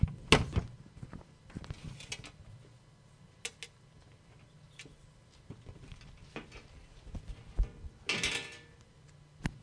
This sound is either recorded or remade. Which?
recorded